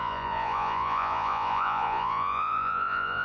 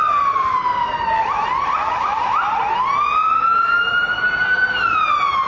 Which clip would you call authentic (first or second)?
second